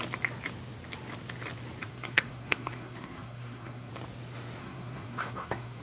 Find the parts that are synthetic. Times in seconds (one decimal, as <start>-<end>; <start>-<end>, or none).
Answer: 1.9-3.9; 4.6-5.8